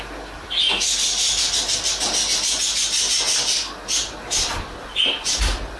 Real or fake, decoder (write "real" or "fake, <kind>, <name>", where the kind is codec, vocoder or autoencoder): real